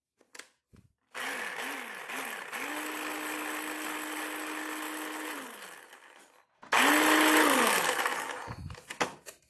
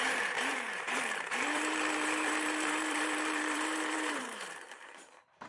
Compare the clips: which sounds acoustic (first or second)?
first